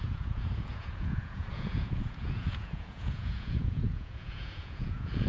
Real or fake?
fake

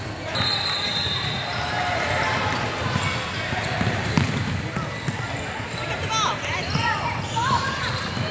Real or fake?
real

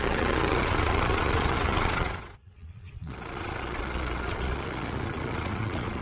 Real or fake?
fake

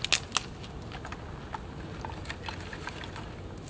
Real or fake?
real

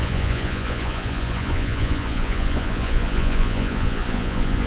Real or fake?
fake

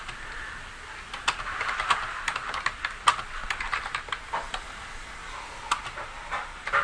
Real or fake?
real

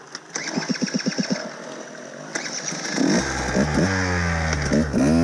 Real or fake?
real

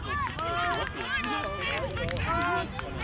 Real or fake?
real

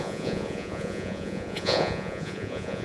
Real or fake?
fake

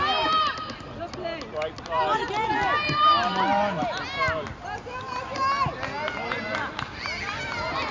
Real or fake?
real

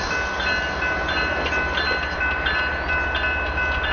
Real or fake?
real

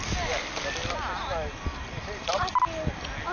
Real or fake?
real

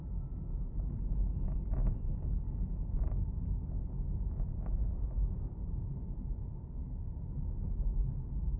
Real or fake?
real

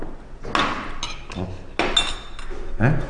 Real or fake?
real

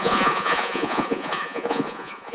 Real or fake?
fake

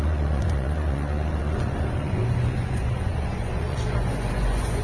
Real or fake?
fake